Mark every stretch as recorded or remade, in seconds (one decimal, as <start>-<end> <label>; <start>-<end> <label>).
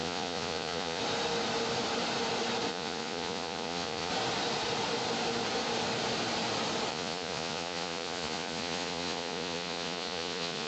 0.0-1.0 remade; 1.0-2.7 recorded; 2.7-4.1 remade; 4.1-6.9 recorded; 6.9-10.7 remade